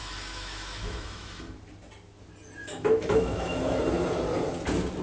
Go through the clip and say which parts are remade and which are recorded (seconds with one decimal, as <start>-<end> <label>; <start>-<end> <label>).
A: 0.0-1.4 remade; 1.4-2.6 recorded; 2.6-3.8 remade; 3.8-5.0 recorded